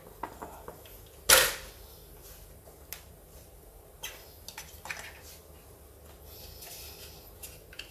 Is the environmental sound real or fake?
real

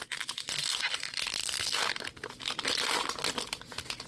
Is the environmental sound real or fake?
real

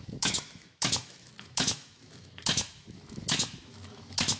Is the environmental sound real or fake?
fake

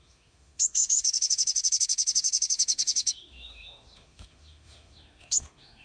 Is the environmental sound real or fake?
fake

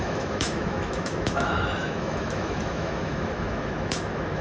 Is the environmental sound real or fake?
fake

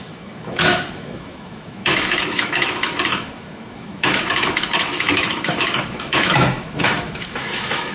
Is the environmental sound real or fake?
fake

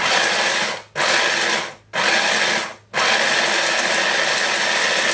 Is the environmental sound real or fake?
real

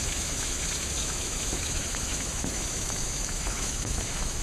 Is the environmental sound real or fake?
fake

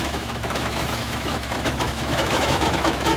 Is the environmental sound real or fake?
fake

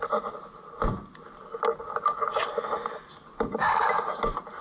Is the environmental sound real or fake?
real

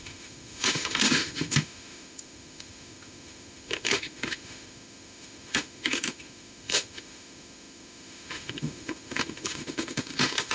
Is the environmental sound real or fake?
fake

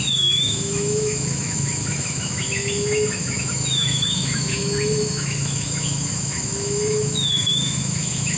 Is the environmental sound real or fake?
fake